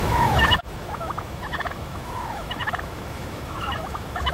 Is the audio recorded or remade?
remade